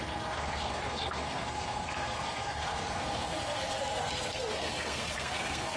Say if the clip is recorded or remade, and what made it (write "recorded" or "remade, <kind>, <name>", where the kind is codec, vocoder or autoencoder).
remade, codec, SNAC